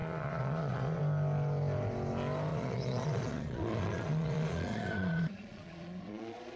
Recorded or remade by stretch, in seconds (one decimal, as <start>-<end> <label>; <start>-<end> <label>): 0.0-1.0 remade; 1.0-2.5 recorded; 2.5-6.6 remade